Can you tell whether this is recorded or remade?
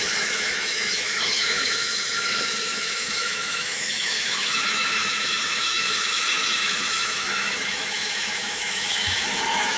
remade